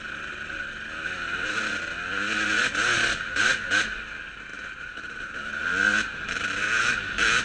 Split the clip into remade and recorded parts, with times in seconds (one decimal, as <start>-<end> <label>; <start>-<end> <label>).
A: 0.0-4.5 recorded; 4.5-5.6 remade; 5.6-7.4 recorded